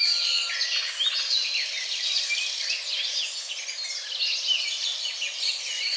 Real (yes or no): yes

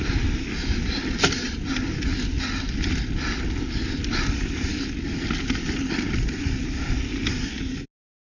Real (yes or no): yes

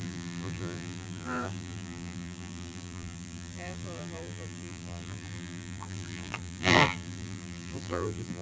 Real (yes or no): no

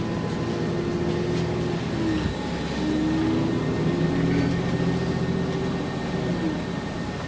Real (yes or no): yes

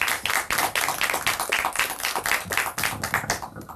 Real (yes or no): yes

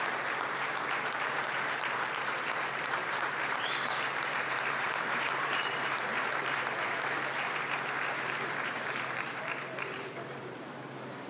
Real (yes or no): no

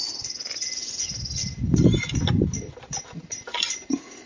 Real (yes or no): yes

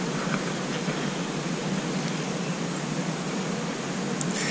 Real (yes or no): yes